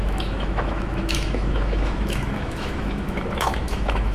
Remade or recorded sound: remade